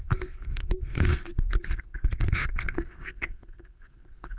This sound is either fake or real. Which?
fake